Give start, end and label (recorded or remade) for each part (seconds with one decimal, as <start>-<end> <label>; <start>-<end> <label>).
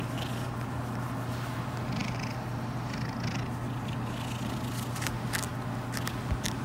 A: 0.0-6.6 recorded